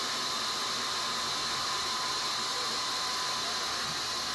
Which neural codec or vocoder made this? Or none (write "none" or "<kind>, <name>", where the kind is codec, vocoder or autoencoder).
none